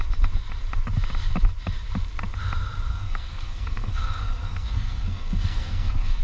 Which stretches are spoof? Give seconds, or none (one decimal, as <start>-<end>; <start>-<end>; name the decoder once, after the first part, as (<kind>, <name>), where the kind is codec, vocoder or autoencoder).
2.9-6.2 (codec, SNAC)